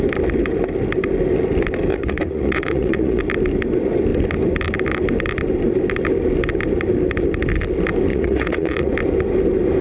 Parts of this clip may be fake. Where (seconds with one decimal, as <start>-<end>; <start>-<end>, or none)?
1.9-3.2; 8.1-8.9